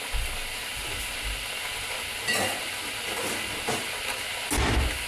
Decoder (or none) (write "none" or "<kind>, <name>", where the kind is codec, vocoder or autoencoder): none